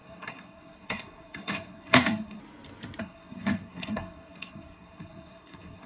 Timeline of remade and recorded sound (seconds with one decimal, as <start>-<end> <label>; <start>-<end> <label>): 0.0-2.4 remade; 2.4-3.0 recorded; 3.0-5.9 remade